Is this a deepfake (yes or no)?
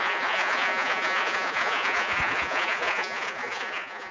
yes